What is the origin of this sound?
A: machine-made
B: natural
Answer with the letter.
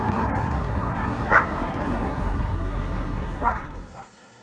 A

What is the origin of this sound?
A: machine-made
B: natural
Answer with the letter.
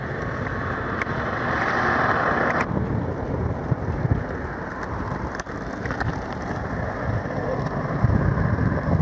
B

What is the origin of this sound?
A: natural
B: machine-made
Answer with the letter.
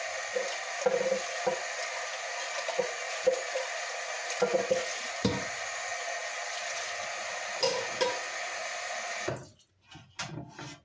A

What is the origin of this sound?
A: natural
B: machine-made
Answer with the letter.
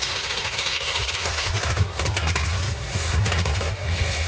B